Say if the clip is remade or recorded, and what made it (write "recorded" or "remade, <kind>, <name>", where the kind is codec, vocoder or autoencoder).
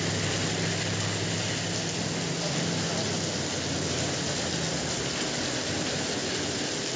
recorded